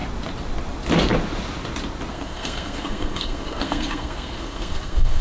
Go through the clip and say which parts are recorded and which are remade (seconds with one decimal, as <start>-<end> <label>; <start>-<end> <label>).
0.0-2.1 recorded; 2.1-5.2 remade